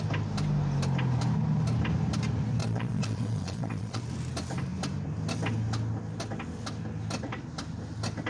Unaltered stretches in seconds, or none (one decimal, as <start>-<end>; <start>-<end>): 0.0-2.6; 4.0-8.3